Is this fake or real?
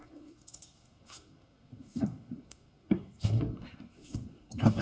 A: fake